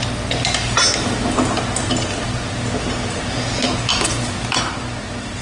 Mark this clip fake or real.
real